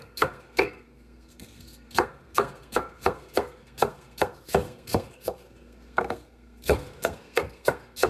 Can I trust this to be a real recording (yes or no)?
no